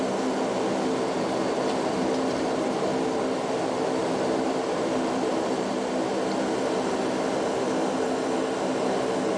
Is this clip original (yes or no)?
yes